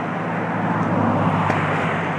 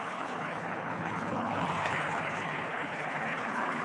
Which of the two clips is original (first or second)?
first